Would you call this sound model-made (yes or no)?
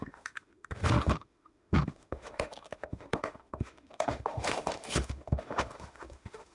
yes